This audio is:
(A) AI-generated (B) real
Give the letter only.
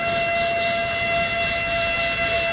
B